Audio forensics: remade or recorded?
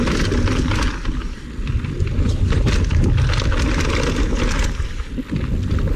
recorded